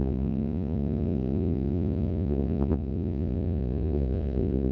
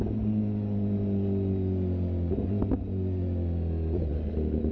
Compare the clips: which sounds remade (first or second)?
first